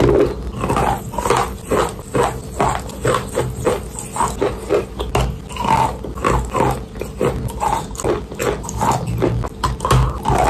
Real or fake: real